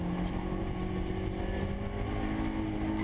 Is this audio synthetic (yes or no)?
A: no